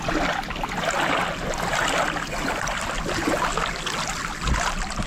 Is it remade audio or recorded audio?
recorded